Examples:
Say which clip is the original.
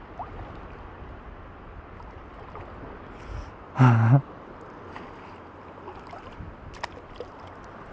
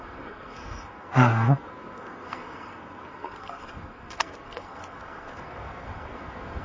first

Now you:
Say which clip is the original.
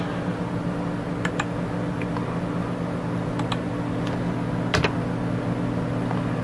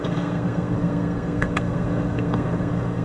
first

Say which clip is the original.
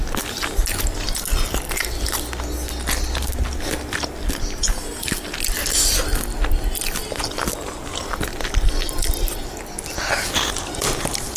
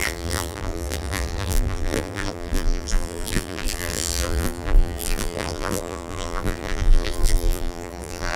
first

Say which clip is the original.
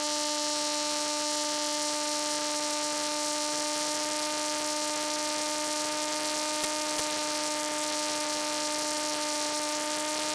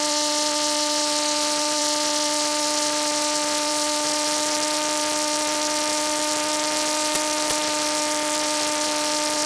first